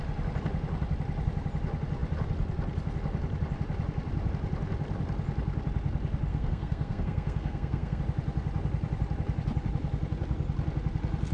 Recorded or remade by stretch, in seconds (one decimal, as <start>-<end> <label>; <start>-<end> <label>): 0.0-6.3 recorded; 6.3-8.0 remade; 8.0-11.3 recorded